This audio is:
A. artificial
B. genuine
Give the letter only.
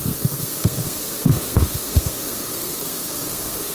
A